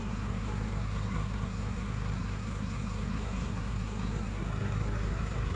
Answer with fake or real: fake